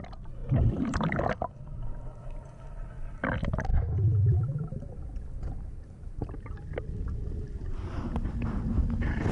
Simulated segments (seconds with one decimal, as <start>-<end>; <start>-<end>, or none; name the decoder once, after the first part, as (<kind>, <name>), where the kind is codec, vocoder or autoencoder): none